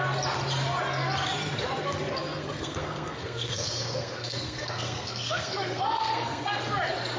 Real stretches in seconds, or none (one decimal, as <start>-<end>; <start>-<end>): 0.0-2.3; 6.6-7.2